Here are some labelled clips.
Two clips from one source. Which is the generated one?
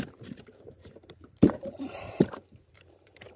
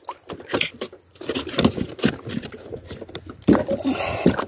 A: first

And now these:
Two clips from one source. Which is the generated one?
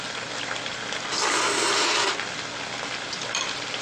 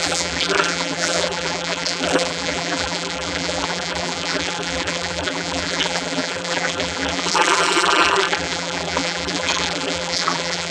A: second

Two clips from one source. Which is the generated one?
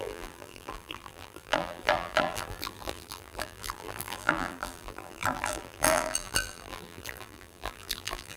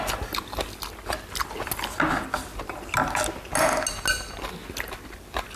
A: first